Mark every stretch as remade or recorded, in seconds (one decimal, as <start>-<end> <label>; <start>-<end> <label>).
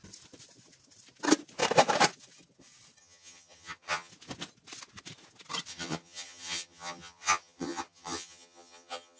0.0-3.0 recorded; 3.0-4.1 remade; 4.1-5.7 recorded; 5.7-9.2 remade